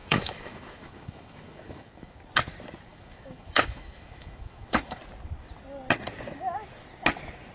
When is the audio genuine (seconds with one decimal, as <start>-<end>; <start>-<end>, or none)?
2.2-2.9; 5.0-7.5